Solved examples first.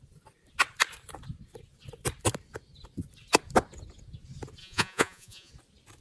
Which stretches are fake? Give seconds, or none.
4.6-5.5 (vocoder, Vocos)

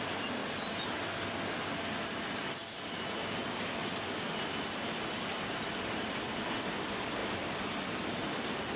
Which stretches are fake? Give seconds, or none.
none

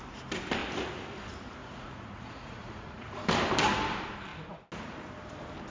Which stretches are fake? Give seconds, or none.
1.6-3.1 (vocoder, Vocos)

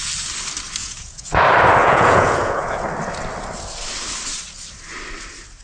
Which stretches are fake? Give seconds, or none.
0.8-1.4 (vocoder, Vocos); 1.8-2.7

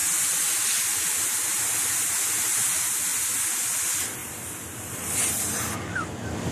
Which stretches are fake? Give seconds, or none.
none

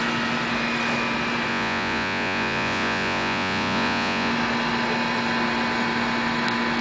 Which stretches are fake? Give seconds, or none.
1.5-4.3 (vocoder, Vocos)

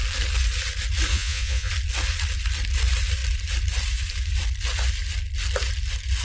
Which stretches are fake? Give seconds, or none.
1.1-1.7 (vocoder, Vocos)